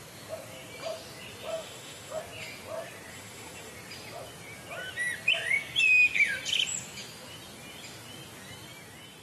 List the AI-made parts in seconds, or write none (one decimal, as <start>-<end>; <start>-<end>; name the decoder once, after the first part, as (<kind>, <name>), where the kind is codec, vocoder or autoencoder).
1.5-2.2 (autoencoder, DAC-VAE); 3.1-3.7